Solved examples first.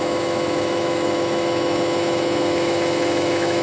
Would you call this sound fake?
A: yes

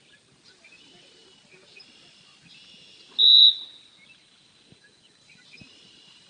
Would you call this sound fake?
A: no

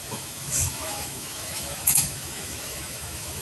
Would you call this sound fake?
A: yes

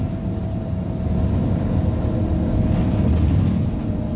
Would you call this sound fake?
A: no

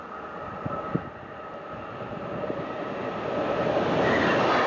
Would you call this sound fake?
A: no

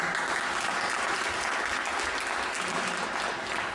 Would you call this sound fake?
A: no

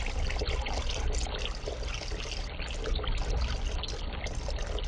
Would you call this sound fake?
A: no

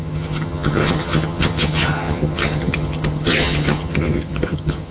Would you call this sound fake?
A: yes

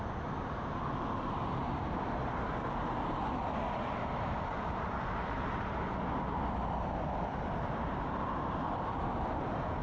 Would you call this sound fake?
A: no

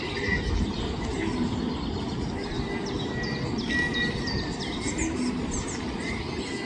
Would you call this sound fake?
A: no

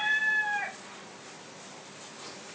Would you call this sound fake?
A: no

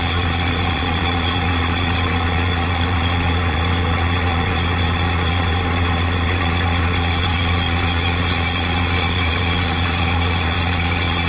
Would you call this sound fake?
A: yes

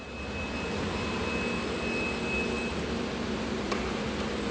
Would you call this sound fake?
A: no